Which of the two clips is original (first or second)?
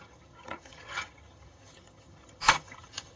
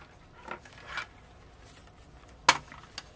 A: second